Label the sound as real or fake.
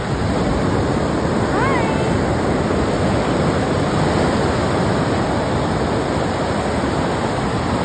real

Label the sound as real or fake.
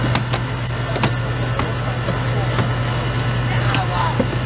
real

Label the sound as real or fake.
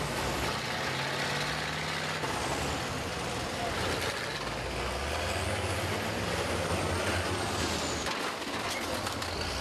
real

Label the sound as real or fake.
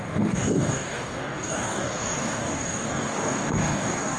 fake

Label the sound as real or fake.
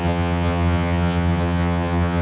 fake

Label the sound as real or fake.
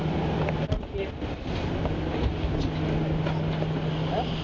real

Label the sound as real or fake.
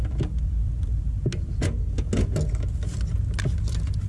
real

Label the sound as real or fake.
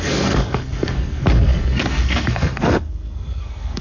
fake